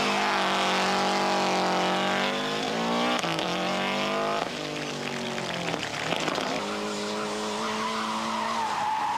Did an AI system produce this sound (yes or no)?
no